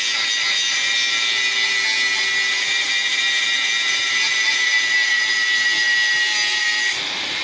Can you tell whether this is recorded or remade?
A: recorded